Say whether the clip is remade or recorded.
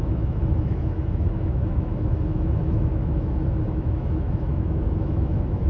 remade